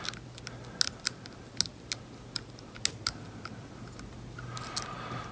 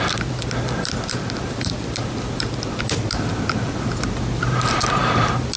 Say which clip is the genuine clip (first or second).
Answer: first